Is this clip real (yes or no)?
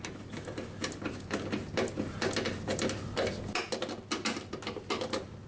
yes